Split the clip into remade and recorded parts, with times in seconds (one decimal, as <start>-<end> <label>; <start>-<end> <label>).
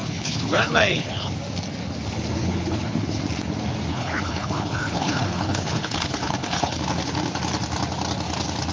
0.0-1.3 remade; 1.3-2.4 recorded; 2.4-3.2 remade; 3.2-3.9 recorded; 3.9-6.8 remade; 6.8-8.7 recorded